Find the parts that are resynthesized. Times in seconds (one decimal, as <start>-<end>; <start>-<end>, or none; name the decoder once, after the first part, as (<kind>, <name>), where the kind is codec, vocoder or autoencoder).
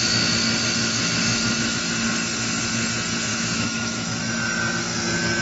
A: 0.8-1.8 (autoencoder, DAC-VAE); 3.3-4.2